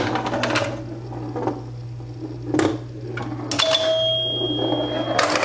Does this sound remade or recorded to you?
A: recorded